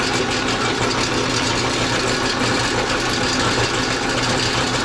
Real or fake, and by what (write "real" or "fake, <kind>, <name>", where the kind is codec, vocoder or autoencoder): real